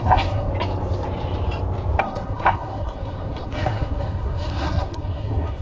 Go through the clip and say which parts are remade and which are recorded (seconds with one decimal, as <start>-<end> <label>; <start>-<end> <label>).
0.0-0.5 remade; 0.5-2.0 recorded; 2.0-5.6 remade